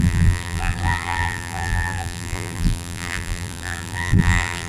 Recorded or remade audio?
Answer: remade